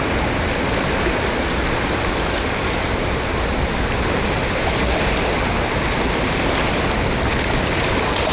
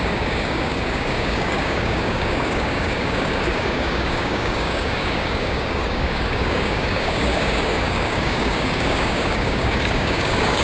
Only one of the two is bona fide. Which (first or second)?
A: first